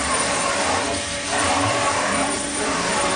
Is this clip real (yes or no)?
no